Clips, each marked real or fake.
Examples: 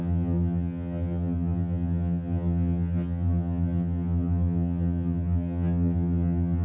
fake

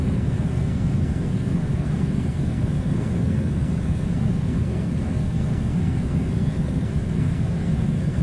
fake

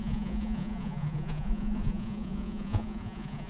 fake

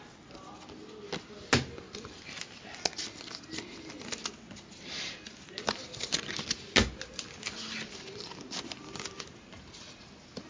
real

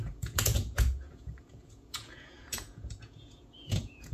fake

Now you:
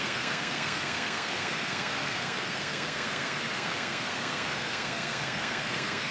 fake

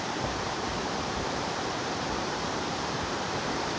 fake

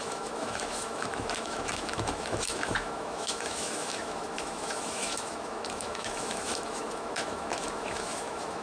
fake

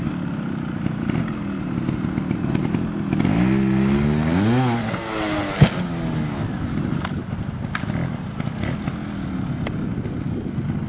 real